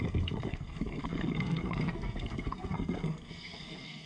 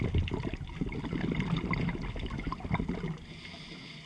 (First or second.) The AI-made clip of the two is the first